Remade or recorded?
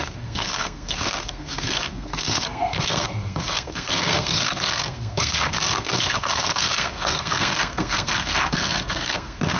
remade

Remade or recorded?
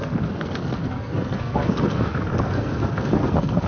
remade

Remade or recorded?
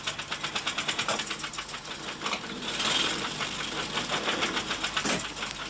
recorded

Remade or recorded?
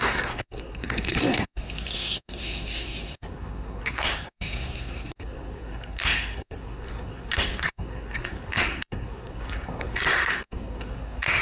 remade